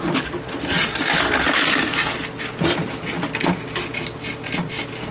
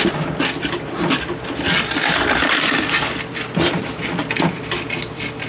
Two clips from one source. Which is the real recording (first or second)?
first